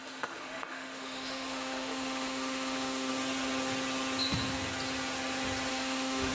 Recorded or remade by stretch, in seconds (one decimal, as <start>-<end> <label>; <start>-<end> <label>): 0.0-3.1 remade; 3.1-5.7 recorded; 5.7-6.3 remade